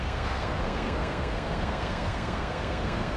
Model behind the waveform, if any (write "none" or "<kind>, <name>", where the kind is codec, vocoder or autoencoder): codec, SNAC